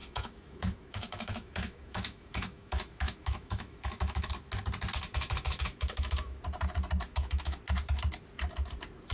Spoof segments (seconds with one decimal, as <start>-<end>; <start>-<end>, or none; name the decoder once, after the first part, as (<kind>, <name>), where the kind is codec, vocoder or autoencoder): 0.0-4.3 (autoencoder, DAC-VAE); 5.1-6.4; 7.1-7.6